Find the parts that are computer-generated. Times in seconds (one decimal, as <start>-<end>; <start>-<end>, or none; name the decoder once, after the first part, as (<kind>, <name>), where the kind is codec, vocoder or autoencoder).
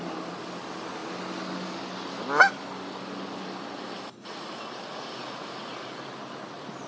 4.2-5.9 (vocoder, Vocos)